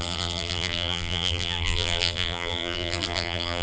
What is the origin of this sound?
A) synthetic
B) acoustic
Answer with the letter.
A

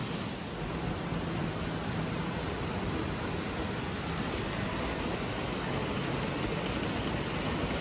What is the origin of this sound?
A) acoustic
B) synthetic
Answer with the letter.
A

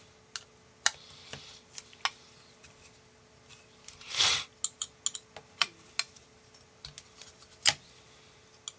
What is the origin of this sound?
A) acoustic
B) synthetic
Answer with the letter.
A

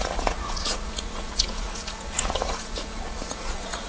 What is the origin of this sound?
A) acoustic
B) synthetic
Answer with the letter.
B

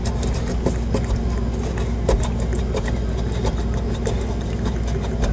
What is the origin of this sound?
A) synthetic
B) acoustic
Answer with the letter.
B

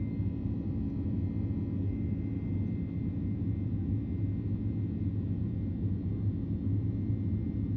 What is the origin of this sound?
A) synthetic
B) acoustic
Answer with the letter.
B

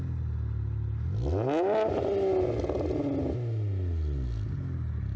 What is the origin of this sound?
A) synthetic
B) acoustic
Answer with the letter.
B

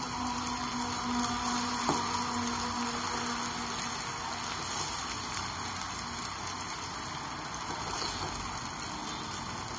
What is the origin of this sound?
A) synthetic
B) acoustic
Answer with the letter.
B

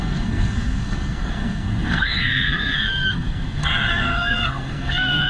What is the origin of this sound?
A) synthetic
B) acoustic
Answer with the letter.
A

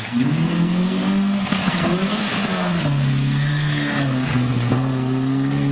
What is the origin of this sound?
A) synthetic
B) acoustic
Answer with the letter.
A